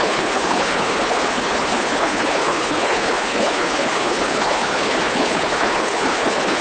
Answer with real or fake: fake